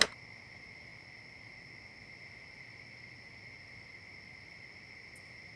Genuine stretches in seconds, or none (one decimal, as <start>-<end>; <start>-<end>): 0.0-5.6